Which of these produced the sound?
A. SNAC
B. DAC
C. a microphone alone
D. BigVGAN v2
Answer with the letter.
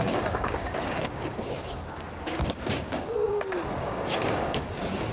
B